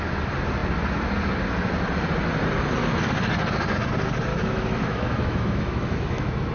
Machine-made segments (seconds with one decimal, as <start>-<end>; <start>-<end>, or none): 4.3-6.5